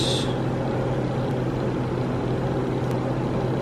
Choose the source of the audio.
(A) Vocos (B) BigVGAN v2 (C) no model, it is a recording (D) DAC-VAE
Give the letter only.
C